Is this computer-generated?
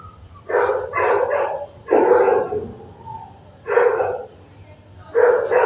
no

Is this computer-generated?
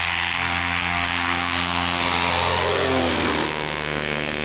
yes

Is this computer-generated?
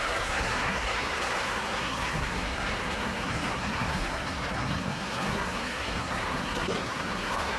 yes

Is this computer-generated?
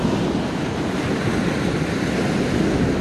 no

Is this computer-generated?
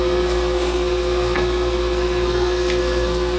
yes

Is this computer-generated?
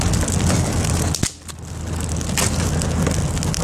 no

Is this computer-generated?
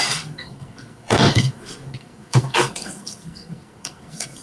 yes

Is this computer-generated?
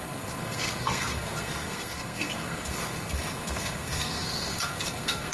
yes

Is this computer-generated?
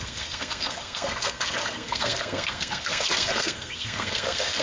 yes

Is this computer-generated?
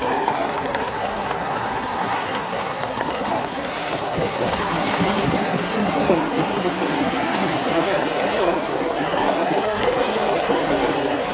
yes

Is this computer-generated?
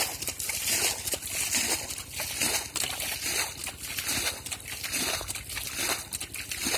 no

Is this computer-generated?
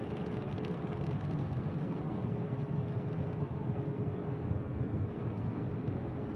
yes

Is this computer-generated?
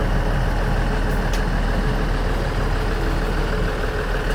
no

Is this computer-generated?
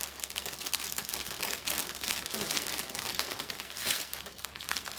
yes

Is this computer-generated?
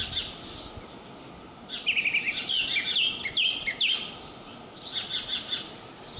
no